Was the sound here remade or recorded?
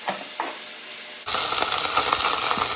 recorded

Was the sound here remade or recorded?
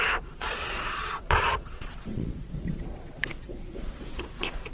remade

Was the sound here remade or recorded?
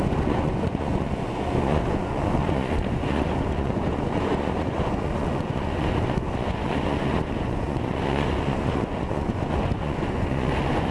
remade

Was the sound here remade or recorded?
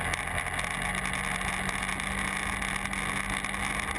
recorded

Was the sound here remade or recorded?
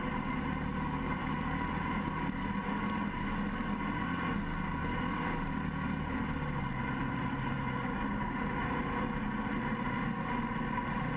recorded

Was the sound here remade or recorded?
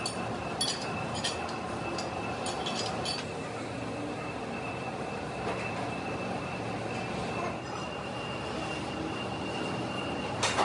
recorded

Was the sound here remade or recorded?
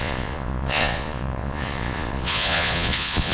remade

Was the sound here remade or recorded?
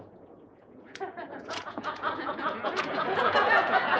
remade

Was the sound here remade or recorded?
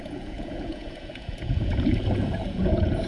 remade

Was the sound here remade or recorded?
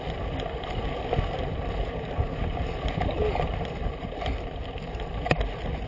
recorded